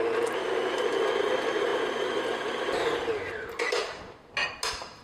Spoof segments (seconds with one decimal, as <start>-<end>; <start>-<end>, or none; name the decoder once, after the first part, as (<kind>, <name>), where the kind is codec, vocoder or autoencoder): none